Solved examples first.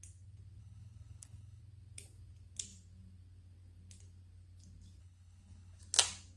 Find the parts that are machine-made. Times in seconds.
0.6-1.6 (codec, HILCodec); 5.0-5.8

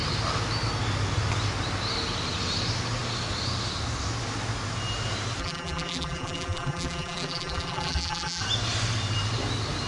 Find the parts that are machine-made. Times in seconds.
5.4-8.4 (vocoder, BigVGAN v2)

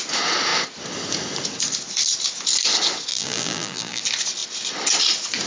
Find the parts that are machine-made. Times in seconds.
3.1-4.0 (vocoder, BigVGAN v2)